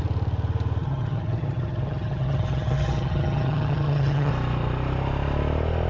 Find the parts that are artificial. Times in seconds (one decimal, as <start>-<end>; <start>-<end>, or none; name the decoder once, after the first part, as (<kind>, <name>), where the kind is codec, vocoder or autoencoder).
0.8-4.3 (vocoder, HiFi-GAN)

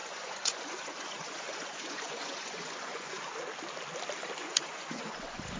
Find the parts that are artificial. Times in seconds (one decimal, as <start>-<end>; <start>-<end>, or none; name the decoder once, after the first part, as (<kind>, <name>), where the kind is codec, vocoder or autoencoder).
0.0-3.2 (vocoder, Vocos); 4.4-5.6

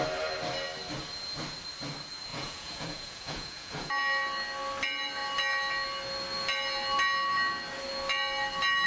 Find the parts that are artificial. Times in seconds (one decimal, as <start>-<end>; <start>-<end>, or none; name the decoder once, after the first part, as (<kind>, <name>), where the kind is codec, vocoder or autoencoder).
2.3-3.9 (vocoder, Vocos)

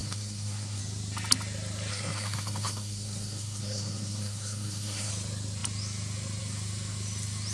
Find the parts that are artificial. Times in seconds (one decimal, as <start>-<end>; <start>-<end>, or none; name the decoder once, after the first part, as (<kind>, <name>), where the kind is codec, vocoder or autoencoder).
0.0-0.8 (codec, SNAC); 1.9-5.1

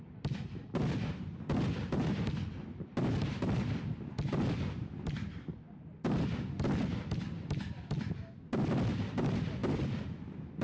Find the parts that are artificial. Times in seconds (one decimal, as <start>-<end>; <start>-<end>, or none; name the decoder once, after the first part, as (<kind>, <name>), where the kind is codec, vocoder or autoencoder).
0.0-10.6 (vocoder, BigVGAN v2)